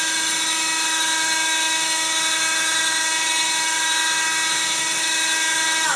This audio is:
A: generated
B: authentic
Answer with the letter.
A